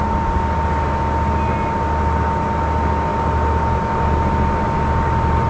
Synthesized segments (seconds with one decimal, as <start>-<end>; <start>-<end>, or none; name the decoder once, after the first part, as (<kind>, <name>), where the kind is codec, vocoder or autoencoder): none